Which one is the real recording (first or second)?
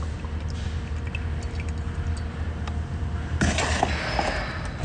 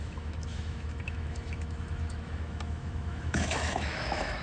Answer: first